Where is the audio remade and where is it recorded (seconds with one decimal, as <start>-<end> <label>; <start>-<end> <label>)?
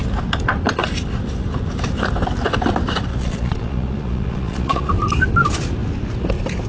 0.0-3.1 recorded; 3.1-4.9 remade; 4.9-6.7 recorded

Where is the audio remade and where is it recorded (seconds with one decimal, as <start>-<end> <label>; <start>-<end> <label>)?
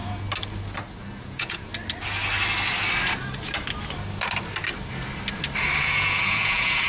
0.0-1.2 recorded; 1.2-1.7 remade; 1.7-5.8 recorded; 5.8-6.9 remade